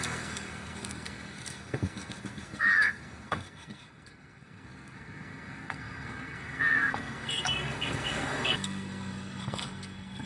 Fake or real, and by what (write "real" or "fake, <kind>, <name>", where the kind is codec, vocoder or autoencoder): fake, codec, SNAC